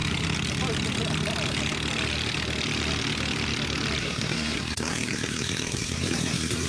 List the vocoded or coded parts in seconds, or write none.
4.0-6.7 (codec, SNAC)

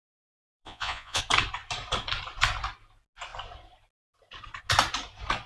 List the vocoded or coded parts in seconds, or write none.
0.0-1.2 (vocoder, Vocos)

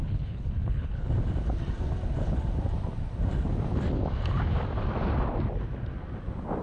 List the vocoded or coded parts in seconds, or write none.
0.0-1.1 (codec, HILCodec)